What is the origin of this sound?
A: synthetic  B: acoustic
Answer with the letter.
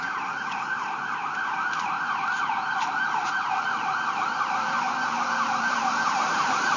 A